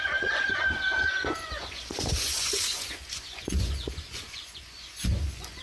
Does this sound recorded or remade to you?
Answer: remade